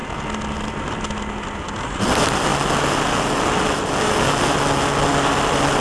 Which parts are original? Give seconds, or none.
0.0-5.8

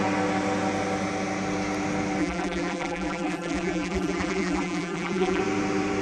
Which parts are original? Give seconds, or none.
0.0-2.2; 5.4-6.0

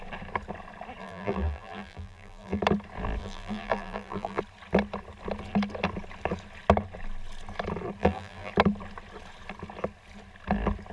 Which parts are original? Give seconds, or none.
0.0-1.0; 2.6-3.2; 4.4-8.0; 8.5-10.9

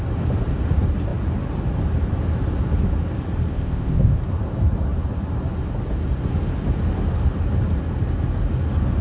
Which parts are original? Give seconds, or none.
0.0-3.5; 4.2-9.0

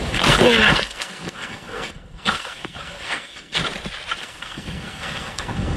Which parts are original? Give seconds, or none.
3.6-4.2

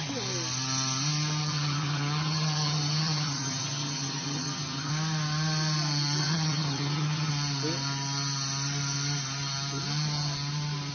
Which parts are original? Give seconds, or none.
0.0-1.4; 4.9-6.2; 7.3-10.9